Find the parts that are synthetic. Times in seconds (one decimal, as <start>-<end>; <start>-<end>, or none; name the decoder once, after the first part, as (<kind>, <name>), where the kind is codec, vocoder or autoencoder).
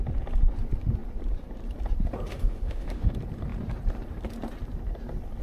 2.3-3.1 (autoencoder, DAC-VAE)